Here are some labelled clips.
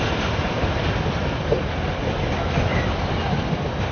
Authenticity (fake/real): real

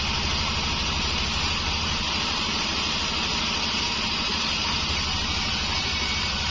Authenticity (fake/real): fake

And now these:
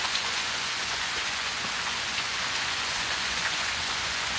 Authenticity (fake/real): fake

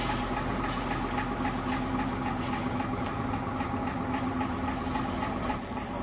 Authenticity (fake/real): real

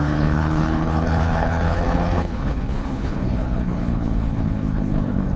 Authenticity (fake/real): fake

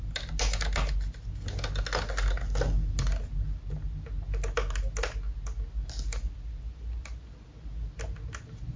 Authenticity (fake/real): real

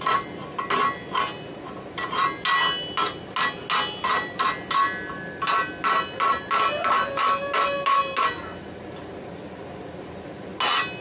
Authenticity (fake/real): real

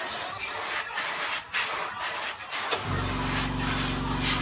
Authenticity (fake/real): real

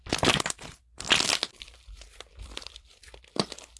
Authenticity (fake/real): real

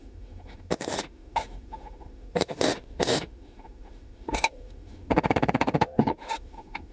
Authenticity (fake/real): fake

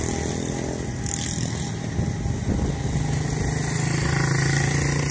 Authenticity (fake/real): real